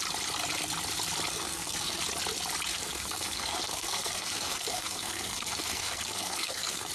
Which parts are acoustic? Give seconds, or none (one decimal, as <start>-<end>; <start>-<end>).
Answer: 0.0-1.3; 2.0-2.7